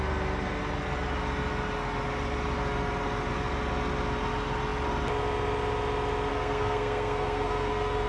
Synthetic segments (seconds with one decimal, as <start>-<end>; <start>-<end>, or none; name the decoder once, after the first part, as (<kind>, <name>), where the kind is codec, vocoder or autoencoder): 6.3-8.1 (codec, SNAC)

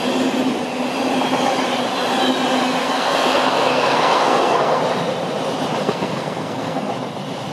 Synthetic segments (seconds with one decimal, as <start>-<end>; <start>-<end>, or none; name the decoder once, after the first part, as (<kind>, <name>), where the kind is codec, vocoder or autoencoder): 2.8-4.8 (codec, SNAC); 5.8-6.9

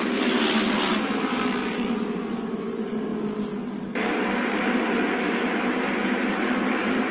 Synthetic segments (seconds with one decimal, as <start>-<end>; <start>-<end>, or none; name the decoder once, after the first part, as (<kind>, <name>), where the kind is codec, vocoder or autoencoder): 0.9-2.3 (vocoder, BigVGAN v2)

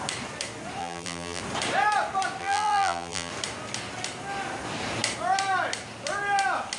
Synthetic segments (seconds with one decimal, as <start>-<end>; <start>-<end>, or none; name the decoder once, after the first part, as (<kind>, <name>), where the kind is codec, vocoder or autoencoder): 0.8-1.4 (vocoder, BigVGAN v2); 2.4-3.3

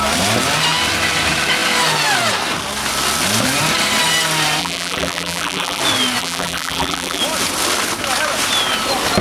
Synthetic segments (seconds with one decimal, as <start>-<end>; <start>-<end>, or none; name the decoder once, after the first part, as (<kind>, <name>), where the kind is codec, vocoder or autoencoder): 4.6-5.8 (vocoder, BigVGAN v2); 6.2-7.2

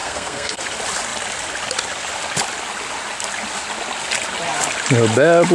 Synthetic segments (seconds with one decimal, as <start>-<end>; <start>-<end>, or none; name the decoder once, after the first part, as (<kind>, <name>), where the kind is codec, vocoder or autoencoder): 0.0-0.6 (codec, SNAC)